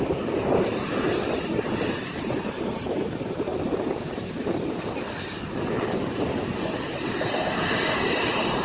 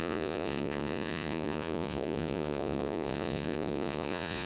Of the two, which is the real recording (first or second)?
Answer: first